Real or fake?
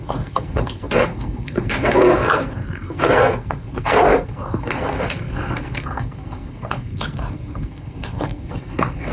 fake